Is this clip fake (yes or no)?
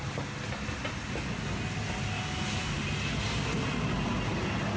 no